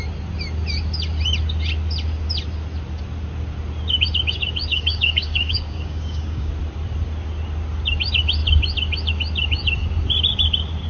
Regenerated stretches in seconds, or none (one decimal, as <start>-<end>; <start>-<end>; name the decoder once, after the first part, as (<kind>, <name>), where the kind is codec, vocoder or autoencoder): 4.7-6.5 (codec, DAC)